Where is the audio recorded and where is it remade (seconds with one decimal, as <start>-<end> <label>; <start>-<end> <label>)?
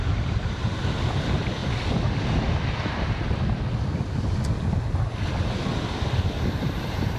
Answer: 0.0-5.7 recorded; 5.7-7.2 remade